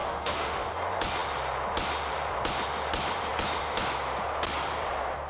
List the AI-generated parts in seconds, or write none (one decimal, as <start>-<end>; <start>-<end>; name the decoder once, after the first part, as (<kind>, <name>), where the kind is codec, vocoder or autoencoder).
0.0-0.7 (autoencoder, DAC-VAE)